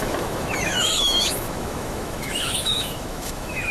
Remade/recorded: remade